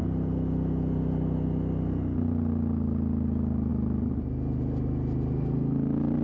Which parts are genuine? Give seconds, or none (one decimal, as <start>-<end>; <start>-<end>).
0.0-6.2